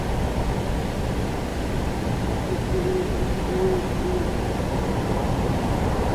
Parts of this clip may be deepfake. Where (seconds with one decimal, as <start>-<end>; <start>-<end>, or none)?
5.2-6.1